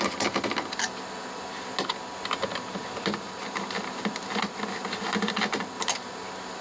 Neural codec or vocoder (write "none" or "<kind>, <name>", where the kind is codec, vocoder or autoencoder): none